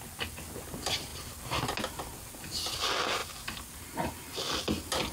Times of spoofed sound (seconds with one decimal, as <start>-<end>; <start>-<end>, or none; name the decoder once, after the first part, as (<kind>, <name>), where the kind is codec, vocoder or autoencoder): none